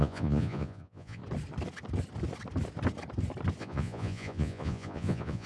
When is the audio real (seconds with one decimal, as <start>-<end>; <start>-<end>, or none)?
1.2-3.6